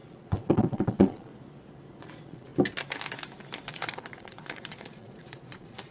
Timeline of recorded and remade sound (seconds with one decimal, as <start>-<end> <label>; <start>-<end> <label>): 0.0-1.3 remade; 1.3-2.0 recorded; 2.0-2.5 remade; 2.5-3.7 recorded; 3.7-5.9 remade